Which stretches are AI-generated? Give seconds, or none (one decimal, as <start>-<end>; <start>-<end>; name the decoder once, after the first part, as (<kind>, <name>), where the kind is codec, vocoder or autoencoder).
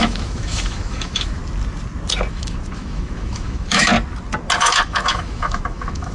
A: 0.0-1.4 (autoencoder, DAC-VAE); 2.3-3.9; 4.6-6.1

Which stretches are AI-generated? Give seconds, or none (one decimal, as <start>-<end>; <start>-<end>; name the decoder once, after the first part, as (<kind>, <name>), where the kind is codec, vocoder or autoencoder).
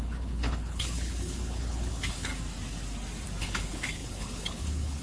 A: 0.0-2.3 (codec, HILCodec); 3.4-5.0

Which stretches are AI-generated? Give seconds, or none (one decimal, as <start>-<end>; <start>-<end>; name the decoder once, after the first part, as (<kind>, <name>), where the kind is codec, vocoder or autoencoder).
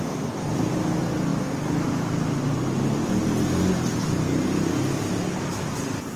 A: none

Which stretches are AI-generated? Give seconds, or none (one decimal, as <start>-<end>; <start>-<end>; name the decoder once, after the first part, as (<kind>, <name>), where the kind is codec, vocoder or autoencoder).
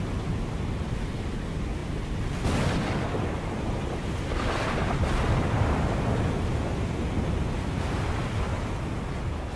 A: none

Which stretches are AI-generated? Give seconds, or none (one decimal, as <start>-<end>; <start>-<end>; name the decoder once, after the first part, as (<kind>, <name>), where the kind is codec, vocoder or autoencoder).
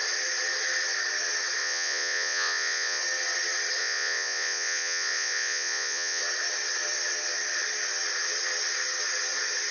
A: 1.6-3.0 (vocoder, Vocos); 3.8-6.2